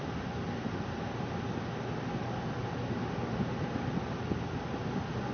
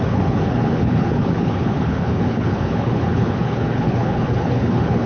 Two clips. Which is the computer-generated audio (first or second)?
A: second